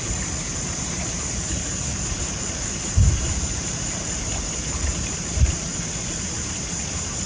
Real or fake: fake